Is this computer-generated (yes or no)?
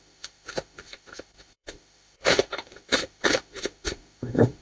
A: yes